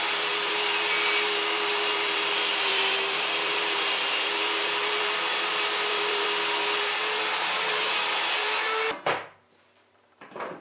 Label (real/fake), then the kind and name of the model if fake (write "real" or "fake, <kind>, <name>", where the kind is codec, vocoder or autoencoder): fake, vocoder, BigVGAN v2